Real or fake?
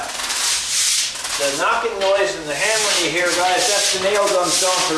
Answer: real